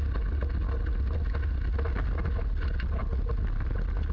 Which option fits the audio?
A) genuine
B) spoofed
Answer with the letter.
A